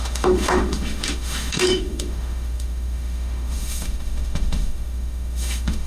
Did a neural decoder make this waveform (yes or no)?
yes